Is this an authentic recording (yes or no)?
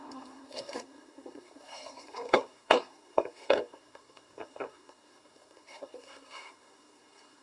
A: no